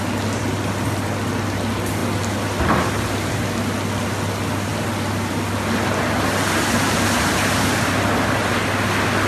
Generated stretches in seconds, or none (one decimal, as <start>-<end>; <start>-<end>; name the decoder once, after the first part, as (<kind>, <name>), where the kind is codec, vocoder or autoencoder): none